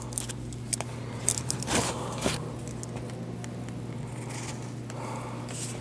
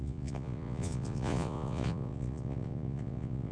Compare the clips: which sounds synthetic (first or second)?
second